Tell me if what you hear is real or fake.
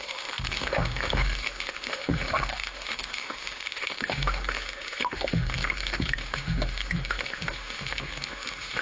fake